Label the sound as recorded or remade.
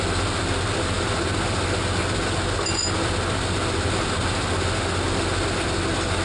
recorded